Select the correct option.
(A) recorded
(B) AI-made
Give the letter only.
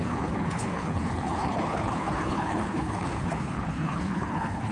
B